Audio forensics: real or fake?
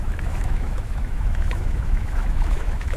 fake